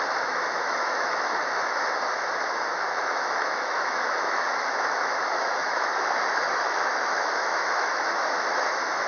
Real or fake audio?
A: fake